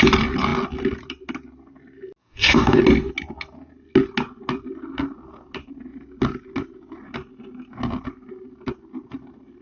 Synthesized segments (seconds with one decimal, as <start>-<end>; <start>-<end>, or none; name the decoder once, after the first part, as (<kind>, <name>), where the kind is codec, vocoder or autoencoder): 2.2-2.8 (codec, DAC)

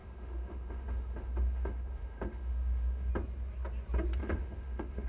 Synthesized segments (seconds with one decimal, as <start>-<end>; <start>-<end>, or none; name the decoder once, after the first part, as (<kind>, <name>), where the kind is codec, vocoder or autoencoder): 0.0-3.1 (autoencoder, DAC-VAE); 4.2-5.1

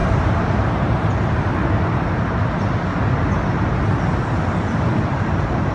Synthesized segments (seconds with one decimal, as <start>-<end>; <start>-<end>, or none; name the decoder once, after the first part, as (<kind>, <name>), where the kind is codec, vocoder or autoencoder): 0.0-1.6 (vocoder, BigVGAN v2); 5.0-5.7